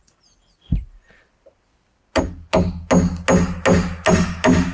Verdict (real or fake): real